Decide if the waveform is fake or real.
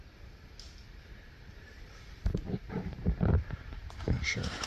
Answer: fake